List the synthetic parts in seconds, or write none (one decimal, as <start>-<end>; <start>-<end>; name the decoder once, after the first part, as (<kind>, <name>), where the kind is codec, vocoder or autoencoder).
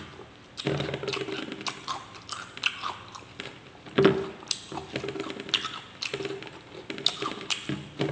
none